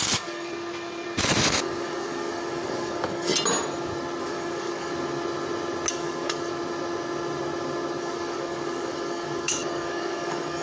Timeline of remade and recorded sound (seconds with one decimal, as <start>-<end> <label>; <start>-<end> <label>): 0.0-0.5 remade; 0.5-1.6 recorded; 1.6-3.3 remade; 3.3-4.2 recorded; 4.2-4.9 remade; 4.9-5.9 recorded; 5.9-6.5 remade; 6.5-8.0 recorded; 8.0-10.6 remade